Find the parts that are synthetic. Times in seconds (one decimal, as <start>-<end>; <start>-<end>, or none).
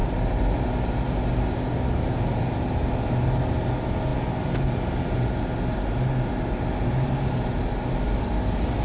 none